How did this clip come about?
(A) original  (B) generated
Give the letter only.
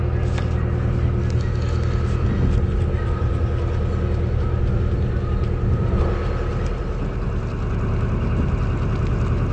A